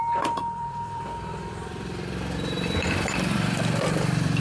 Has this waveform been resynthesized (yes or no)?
yes